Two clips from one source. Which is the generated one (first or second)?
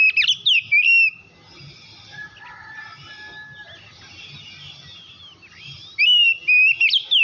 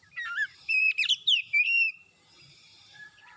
second